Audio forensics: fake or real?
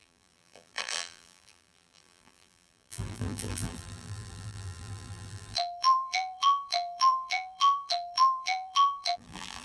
fake